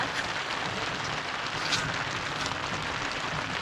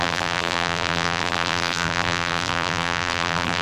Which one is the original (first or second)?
first